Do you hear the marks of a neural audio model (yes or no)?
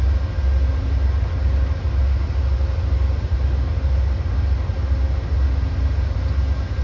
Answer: no